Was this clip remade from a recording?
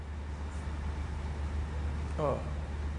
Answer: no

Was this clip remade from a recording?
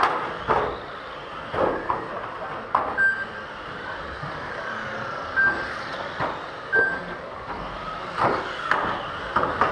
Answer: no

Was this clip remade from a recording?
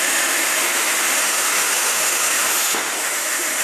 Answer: yes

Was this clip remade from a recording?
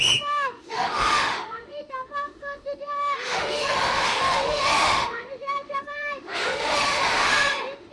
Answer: yes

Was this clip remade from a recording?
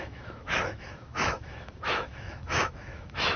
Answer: yes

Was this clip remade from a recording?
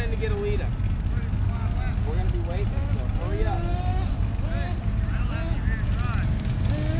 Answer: no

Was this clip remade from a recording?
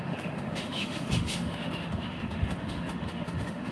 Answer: yes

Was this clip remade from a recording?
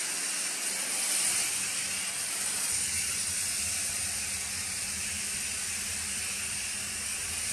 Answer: no